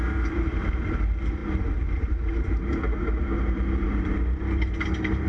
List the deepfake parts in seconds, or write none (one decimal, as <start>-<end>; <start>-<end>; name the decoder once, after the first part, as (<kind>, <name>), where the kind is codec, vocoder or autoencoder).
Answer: 0.0-5.3 (vocoder, BigVGAN v2)